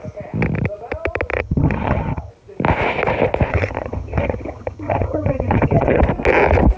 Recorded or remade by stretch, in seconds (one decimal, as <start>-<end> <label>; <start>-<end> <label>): 0.0-1.3 recorded; 1.3-2.3 remade; 2.3-3.5 recorded; 3.5-6.0 remade; 6.0-6.8 recorded